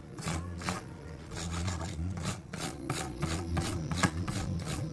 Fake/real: fake